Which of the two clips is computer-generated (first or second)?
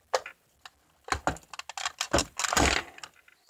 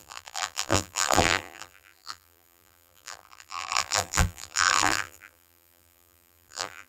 second